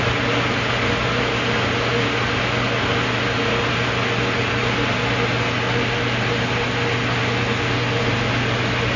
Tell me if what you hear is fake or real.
real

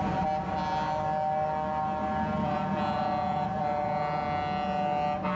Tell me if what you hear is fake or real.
real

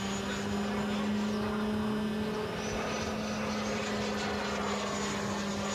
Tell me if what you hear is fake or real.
real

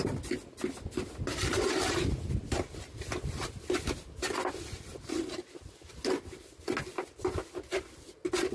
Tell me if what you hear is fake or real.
real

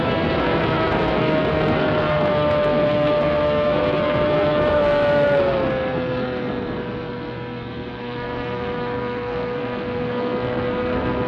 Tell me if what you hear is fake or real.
fake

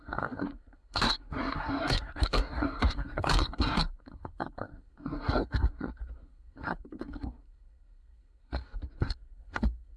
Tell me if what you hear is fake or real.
fake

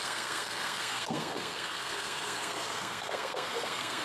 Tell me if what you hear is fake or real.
fake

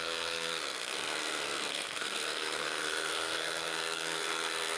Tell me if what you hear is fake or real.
fake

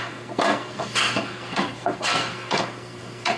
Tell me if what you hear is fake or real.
fake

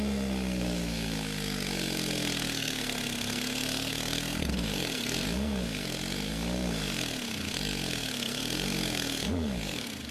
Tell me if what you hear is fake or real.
fake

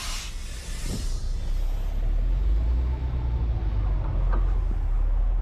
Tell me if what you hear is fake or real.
real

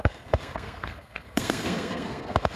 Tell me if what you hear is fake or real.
fake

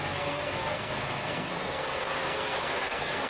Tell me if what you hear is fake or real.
fake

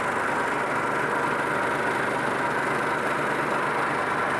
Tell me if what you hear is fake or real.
real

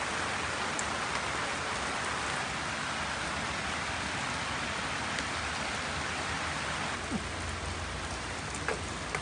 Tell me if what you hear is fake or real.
real